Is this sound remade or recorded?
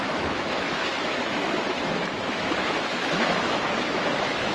remade